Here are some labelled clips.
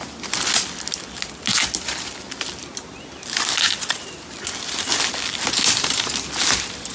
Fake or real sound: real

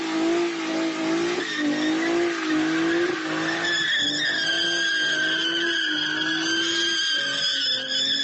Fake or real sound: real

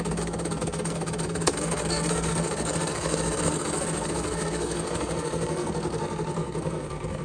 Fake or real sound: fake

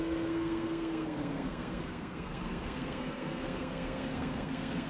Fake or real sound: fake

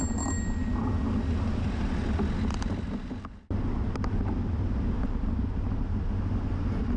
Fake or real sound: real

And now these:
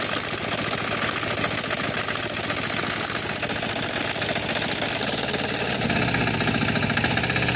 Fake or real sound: real